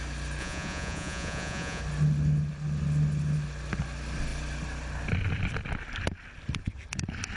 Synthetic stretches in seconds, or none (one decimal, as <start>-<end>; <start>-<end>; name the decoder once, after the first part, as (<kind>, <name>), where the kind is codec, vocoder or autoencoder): 0.4-1.8 (vocoder, Vocos)